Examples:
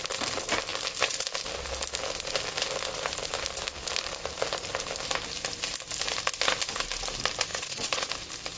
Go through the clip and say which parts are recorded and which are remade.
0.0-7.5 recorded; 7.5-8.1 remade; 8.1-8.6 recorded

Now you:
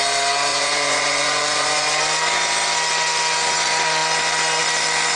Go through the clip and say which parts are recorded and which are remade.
0.0-0.5 recorded; 0.5-2.0 remade; 2.0-5.2 recorded

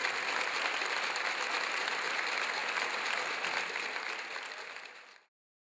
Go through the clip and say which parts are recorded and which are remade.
0.0-5.6 recorded

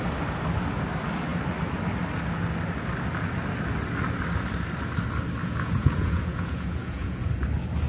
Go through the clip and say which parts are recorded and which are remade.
0.0-5.4 recorded; 5.4-7.3 remade; 7.3-7.9 recorded

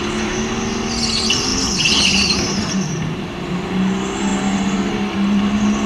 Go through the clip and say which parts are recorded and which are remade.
0.0-5.9 recorded

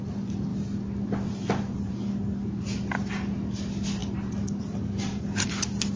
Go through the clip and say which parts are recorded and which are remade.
0.0-6.0 recorded